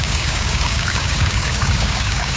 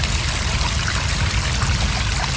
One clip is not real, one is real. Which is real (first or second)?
second